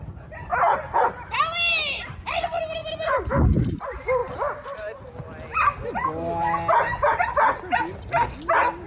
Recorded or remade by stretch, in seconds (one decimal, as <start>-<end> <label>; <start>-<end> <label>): 0.0-8.9 recorded